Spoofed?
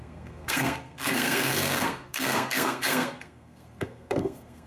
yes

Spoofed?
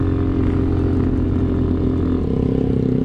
no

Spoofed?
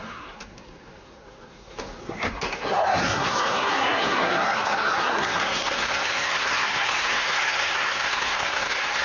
yes